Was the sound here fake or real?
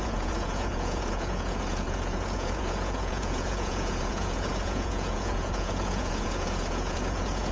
fake